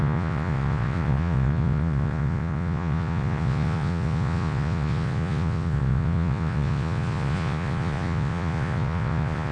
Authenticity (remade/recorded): remade